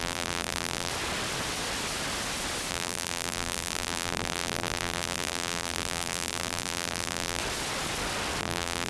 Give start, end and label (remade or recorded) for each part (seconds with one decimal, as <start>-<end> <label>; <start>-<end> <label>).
0.0-0.9 remade; 0.9-2.7 recorded; 2.7-7.4 remade; 7.4-8.4 recorded; 8.4-8.9 remade